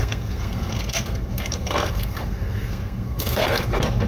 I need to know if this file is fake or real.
fake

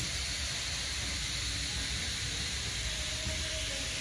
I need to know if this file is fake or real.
real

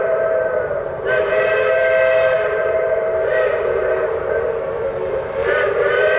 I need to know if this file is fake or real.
fake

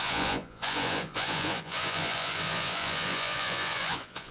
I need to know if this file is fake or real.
fake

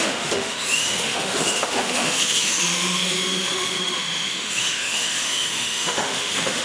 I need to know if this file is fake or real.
fake